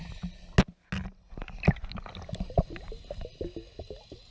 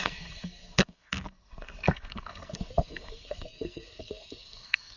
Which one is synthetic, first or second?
second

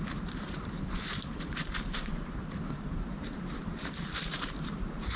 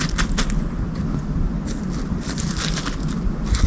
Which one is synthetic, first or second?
first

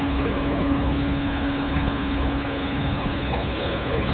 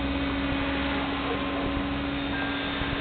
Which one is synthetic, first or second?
first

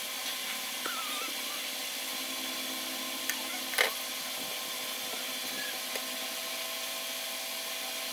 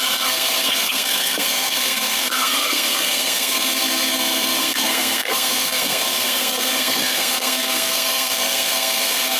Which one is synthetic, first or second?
second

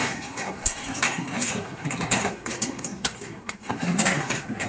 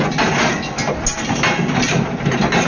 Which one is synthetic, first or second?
first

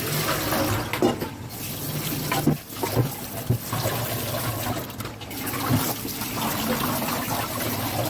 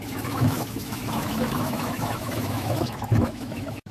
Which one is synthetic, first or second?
second